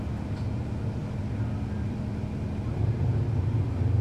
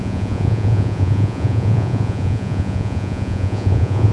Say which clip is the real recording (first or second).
first